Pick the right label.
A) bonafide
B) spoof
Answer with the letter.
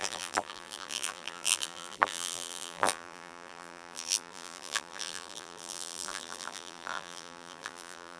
B